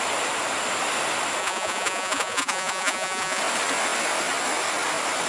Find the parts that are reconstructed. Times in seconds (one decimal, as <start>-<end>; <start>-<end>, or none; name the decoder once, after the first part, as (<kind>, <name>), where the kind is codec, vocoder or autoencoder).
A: 1.4-3.4 (vocoder, Vocos)